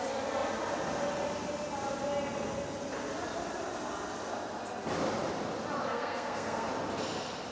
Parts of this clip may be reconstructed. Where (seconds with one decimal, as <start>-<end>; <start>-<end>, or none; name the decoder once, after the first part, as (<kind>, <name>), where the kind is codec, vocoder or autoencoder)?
5.8-6.7 (codec, SNAC)